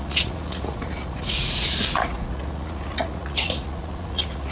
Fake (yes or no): yes